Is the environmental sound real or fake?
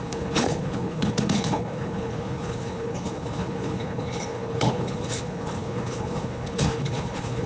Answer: fake